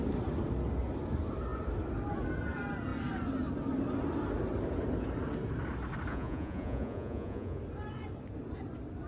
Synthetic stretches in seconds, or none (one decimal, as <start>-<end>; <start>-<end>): 6.1-7.6